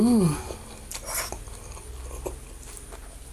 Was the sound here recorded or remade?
recorded